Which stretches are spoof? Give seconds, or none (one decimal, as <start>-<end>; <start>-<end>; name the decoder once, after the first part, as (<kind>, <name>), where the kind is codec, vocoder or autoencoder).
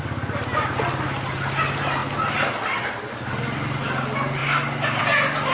none